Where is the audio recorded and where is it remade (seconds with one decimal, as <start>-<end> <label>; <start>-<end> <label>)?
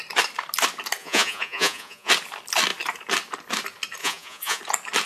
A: 0.0-1.0 recorded; 1.0-2.1 remade; 2.1-4.0 recorded; 4.0-4.6 remade; 4.6-5.1 recorded